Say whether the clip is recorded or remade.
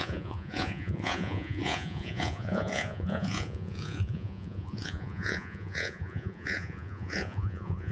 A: remade